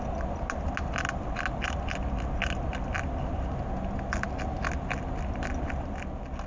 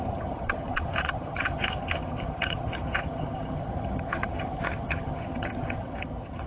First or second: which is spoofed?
second